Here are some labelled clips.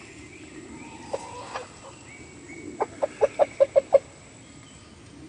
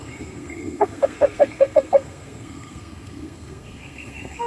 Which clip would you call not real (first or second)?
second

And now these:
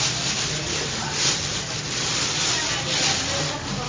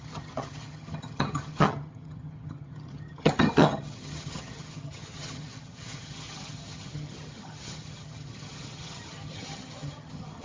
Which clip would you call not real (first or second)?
second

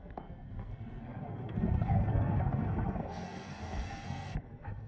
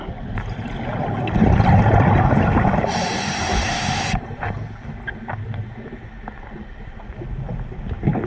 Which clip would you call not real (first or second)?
first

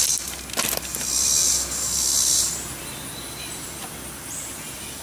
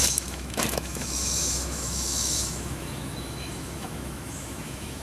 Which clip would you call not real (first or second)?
second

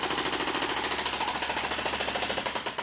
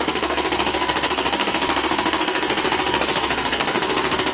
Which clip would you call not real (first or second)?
second